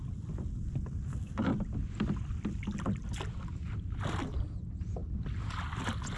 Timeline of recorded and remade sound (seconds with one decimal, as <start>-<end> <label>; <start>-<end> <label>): 0.0-1.5 recorded; 1.5-4.0 remade; 4.0-6.2 recorded

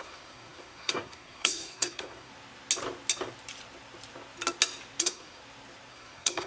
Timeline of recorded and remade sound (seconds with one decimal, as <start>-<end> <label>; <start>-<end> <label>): 0.0-2.3 remade; 2.3-5.0 recorded; 5.0-5.4 remade; 5.4-5.9 recorded; 5.9-6.5 remade

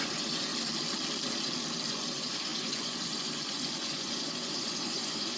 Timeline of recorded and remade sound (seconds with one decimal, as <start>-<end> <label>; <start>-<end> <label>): 0.0-0.5 remade; 0.5-1.9 recorded; 1.9-5.4 remade

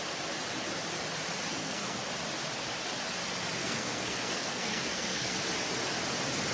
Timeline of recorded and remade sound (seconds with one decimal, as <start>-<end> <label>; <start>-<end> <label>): 0.0-1.5 recorded; 1.5-2.0 remade; 2.0-3.6 recorded; 3.6-5.4 remade; 5.4-6.5 recorded

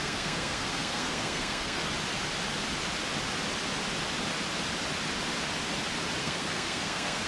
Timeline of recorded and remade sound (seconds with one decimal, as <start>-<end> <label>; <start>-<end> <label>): 0.0-1.8 remade; 1.8-6.2 recorded; 6.2-7.3 remade

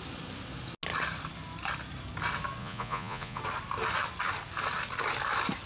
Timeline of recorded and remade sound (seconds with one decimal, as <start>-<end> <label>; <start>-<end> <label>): 0.0-2.6 recorded; 2.6-3.4 remade; 3.4-5.7 recorded

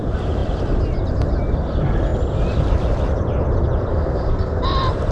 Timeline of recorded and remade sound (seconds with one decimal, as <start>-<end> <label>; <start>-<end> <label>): 0.0-3.9 recorded; 3.9-4.6 remade; 4.6-5.1 recorded